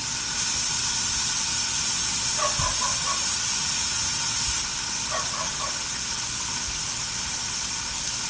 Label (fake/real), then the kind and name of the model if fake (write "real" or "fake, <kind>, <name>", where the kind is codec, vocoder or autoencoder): real